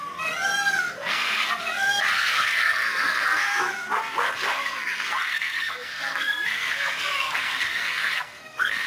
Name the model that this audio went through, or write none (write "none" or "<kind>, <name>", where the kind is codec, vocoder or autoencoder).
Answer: codec, SNAC